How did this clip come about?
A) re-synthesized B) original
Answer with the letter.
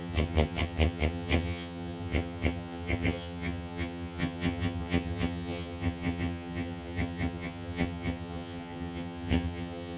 A